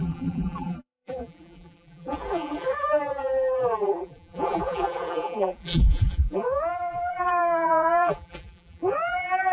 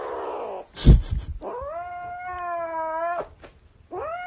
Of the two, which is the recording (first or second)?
second